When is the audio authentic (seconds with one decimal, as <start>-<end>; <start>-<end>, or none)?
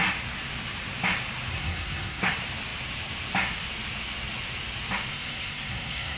0.0-1.5; 2.3-5.1